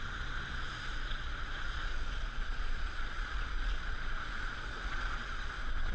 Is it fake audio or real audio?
fake